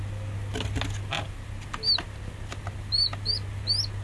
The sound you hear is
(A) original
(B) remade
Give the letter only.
A